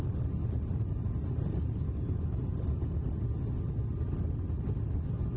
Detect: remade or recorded recorded